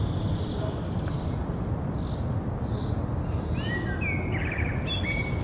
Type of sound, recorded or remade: recorded